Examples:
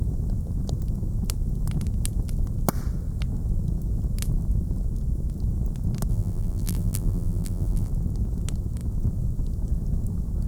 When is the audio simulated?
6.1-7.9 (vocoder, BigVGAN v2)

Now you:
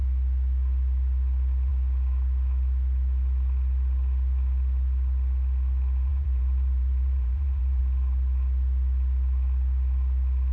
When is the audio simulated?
6.1-7.8 (vocoder, BigVGAN v2)

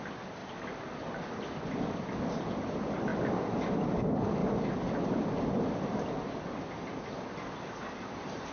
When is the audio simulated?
3.1-3.7 (vocoder, BigVGAN v2); 4.4-7.1

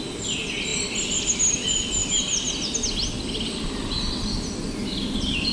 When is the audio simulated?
none

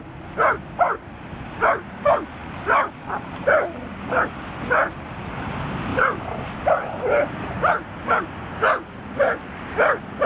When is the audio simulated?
2.4-3.6 (vocoder, BigVGAN v2); 5.9-7.5

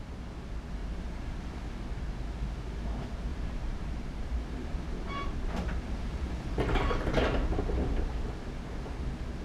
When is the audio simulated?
0.8-1.5 (vocoder, BigVGAN v2); 3.3-8.1